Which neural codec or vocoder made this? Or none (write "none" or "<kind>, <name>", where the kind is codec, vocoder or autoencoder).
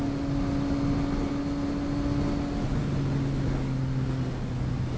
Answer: none